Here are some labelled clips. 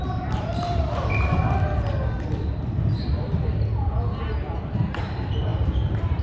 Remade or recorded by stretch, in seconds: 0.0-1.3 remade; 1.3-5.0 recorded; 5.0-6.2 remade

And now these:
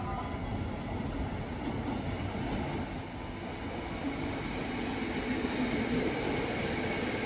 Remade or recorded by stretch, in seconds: 0.0-6.6 recorded; 6.6-7.3 remade

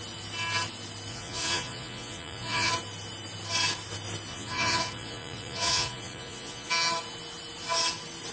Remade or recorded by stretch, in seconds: 0.0-1.1 recorded; 1.1-2.7 remade; 2.7-4.3 recorded; 4.3-6.7 remade; 6.7-8.3 recorded

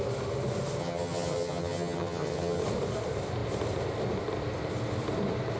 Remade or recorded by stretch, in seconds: 0.0-0.8 recorded; 0.8-2.6 remade; 2.6-5.6 recorded

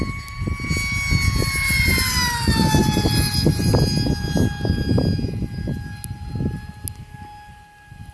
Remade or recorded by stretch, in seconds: 0.0-8.1 recorded